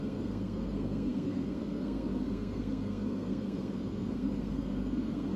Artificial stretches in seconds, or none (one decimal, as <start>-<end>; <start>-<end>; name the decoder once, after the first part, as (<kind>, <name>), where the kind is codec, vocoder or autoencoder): 0.0-5.4 (codec, SNAC)